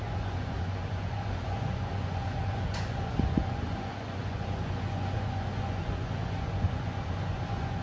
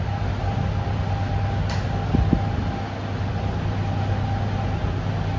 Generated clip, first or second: first